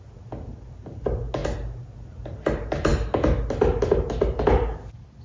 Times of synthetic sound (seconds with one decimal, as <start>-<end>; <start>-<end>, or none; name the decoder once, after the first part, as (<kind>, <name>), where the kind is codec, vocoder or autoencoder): none